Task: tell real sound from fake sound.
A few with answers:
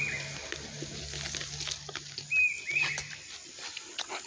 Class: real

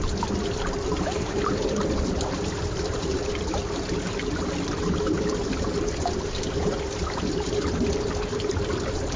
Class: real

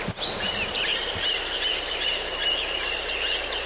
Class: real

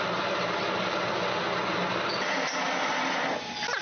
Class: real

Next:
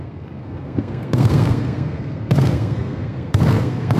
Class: fake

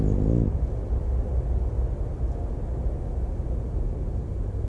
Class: real